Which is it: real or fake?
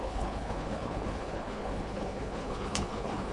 fake